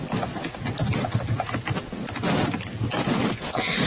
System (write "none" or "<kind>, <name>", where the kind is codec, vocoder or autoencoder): none